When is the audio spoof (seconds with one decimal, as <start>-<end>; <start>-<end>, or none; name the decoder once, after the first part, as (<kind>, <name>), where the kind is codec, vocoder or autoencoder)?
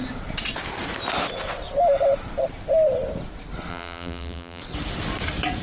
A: 3.7-4.6 (vocoder, BigVGAN v2)